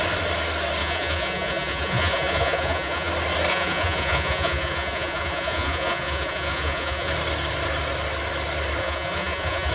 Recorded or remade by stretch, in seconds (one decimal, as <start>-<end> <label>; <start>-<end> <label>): 0.0-0.8 recorded; 0.8-3.1 remade; 3.1-3.5 recorded; 3.5-7.1 remade; 7.1-8.8 recorded; 8.8-9.7 remade